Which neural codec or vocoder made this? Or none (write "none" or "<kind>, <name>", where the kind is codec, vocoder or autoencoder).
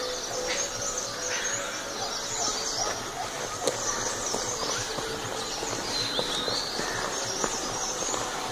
none